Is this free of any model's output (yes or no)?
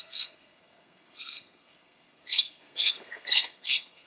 no